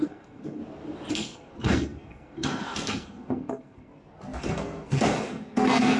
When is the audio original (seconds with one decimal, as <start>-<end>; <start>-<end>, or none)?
0.6-1.1; 3.9-4.4